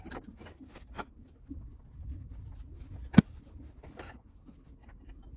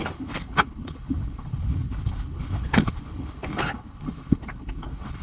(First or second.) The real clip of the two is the first